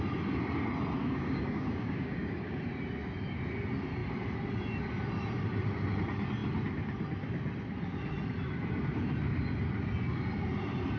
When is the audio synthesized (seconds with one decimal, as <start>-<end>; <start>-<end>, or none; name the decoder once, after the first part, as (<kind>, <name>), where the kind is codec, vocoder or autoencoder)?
1.0-2.6 (codec, DAC)